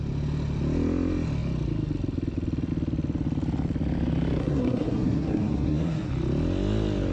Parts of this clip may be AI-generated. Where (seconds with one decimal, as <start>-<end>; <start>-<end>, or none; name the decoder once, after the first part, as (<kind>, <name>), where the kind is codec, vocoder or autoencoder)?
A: 4.4-6.1 (codec, SNAC)